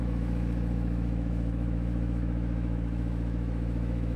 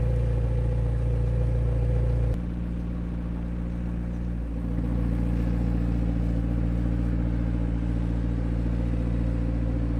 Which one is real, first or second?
second